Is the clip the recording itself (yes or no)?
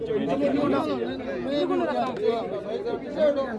yes